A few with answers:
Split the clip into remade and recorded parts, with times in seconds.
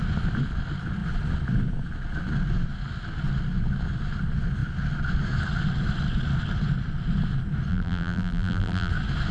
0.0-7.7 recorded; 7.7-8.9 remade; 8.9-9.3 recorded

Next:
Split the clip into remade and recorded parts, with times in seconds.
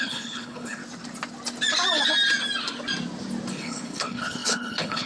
0.0-0.8 remade; 0.8-3.5 recorded; 3.5-5.1 remade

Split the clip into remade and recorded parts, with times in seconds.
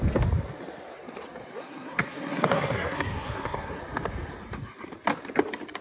0.0-1.6 recorded; 1.6-3.8 remade; 3.8-5.8 recorded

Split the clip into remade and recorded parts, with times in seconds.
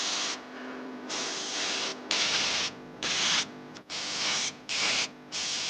0.0-5.7 recorded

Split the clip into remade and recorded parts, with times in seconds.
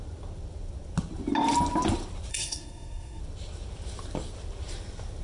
0.0-2.3 recorded; 2.3-3.2 remade; 3.2-5.2 recorded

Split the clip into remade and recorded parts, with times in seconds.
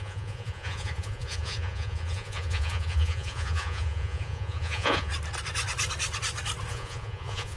0.0-5.1 remade; 5.1-6.7 recorded; 6.7-7.6 remade